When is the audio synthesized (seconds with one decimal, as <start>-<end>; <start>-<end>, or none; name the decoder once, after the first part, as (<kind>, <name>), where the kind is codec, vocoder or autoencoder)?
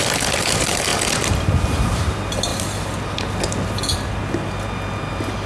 none